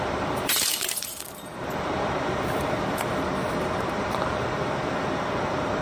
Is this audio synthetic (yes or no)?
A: yes